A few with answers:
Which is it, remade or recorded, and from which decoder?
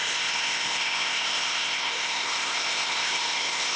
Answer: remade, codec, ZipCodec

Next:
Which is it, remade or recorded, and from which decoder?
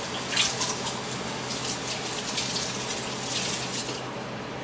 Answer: recorded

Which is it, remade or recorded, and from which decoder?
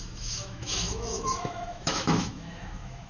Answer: remade, autoencoder, DAC-VAE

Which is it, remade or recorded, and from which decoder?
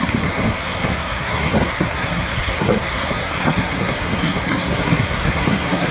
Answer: remade, codec, SNAC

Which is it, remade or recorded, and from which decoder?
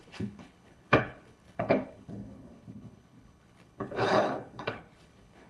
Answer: remade, codec, HILCodec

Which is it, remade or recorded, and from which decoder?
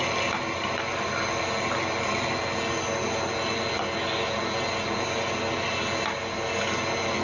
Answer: recorded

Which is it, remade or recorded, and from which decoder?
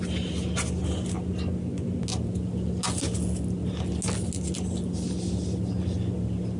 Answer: recorded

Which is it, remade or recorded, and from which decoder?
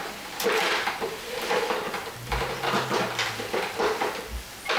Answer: remade, vocoder, BigVGAN v2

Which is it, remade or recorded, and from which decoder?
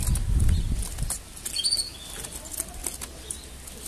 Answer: recorded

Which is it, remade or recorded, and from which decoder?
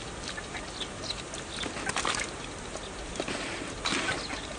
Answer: recorded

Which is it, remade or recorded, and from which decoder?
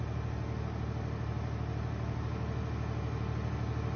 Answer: recorded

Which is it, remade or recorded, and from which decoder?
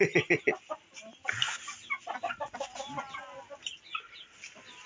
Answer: recorded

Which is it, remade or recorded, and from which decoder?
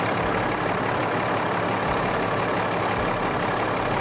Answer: recorded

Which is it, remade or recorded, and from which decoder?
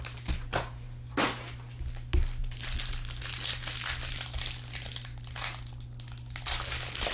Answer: recorded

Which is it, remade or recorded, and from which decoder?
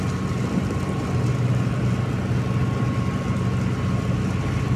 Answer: recorded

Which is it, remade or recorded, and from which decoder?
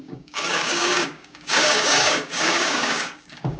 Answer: remade, codec, DAC